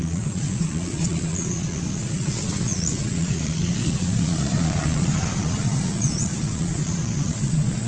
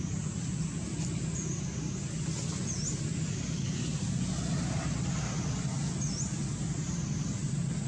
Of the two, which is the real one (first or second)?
second